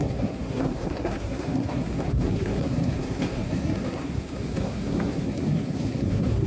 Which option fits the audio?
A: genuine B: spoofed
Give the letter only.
B